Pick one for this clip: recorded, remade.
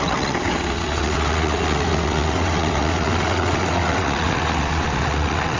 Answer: remade